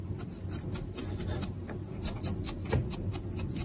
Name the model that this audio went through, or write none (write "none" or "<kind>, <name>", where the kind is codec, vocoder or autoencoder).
none